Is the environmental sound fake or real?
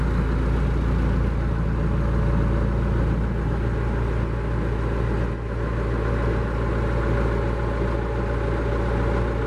real